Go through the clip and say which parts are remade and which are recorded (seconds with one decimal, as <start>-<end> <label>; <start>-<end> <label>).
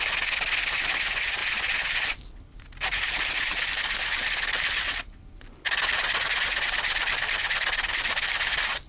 0.0-8.9 recorded